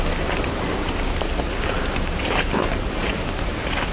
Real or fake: real